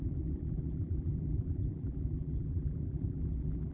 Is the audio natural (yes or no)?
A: no